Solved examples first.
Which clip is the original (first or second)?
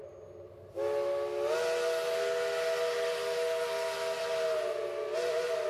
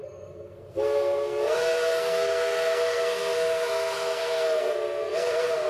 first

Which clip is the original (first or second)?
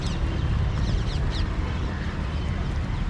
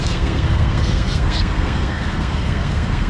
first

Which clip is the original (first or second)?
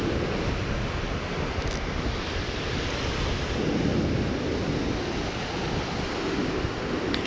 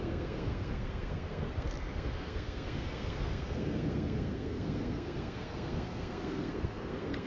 first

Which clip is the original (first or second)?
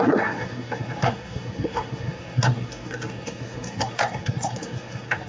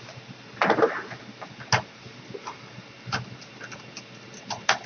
second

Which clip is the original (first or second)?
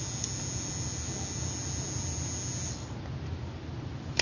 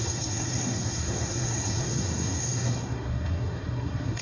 first